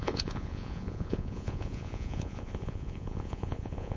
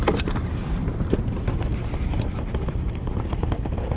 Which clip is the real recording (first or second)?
second